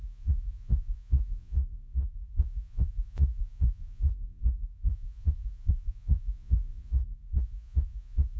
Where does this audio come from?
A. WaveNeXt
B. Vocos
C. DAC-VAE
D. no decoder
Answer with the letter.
B